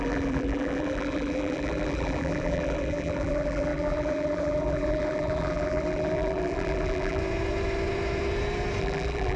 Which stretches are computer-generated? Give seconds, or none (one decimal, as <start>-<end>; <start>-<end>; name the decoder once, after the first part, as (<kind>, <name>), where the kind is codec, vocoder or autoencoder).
0.0-7.2 (vocoder, BigVGAN v2); 8.8-9.4